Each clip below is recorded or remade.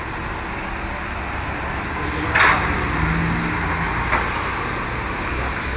recorded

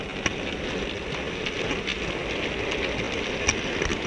recorded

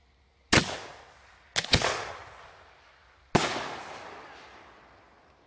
recorded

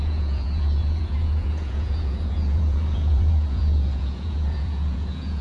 remade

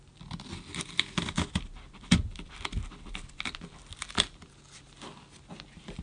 recorded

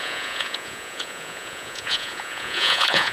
remade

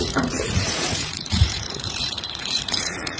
remade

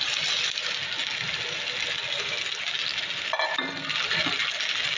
recorded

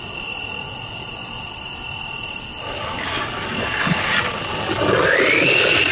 recorded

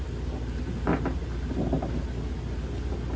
recorded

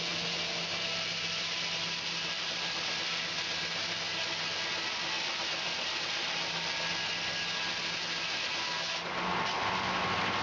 recorded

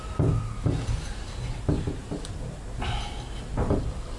recorded